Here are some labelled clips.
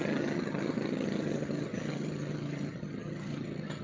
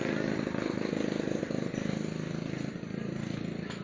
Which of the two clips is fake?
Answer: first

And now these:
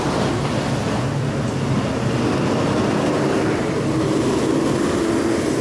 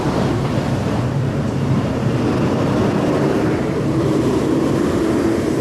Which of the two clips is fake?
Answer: second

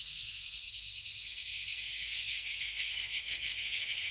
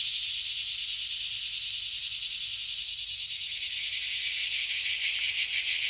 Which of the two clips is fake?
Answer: first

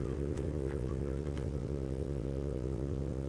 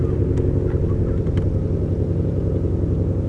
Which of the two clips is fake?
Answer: first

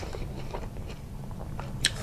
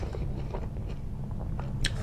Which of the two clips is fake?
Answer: first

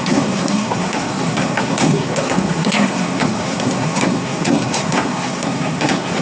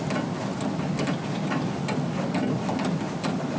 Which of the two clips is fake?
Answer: first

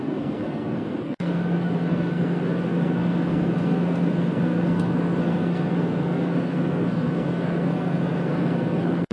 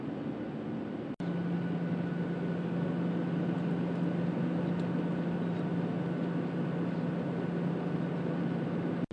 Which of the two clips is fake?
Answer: first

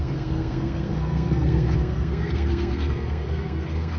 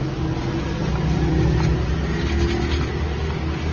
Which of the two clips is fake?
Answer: first